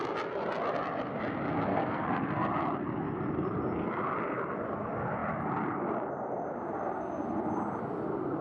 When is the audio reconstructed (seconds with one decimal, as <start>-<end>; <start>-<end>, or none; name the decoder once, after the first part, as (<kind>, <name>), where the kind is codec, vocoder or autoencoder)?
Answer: 1.7-2.5 (codec, SNAC)